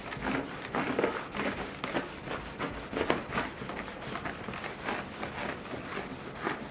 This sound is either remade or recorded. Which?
recorded